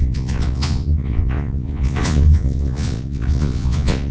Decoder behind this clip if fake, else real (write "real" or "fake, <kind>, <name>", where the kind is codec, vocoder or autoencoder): fake, vocoder, Vocos